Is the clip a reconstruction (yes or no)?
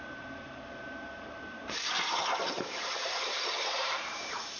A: yes